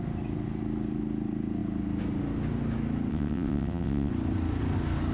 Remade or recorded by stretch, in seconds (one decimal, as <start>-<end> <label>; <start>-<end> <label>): 0.0-3.1 recorded; 3.1-4.1 remade; 4.1-5.1 recorded